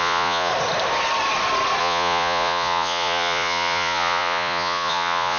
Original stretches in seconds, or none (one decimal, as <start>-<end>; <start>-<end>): 0.5-1.8